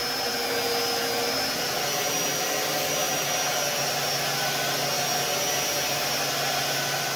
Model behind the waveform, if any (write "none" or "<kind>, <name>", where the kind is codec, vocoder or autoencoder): none